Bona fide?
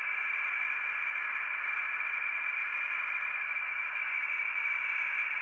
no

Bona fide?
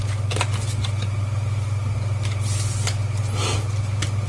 yes